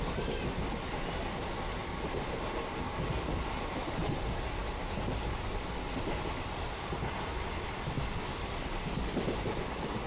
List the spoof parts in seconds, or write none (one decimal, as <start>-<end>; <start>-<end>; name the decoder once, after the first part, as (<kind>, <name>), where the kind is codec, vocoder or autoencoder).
none